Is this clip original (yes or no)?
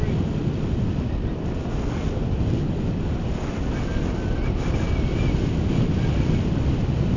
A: yes